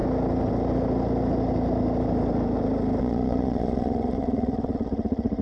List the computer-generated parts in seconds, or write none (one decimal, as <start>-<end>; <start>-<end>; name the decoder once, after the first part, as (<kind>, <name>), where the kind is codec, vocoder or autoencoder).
3.0-5.4 (vocoder, Vocos)